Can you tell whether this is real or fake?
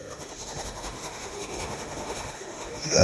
fake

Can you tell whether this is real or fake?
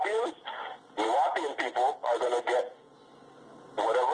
real